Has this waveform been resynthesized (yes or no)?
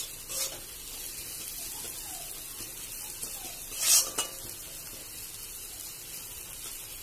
no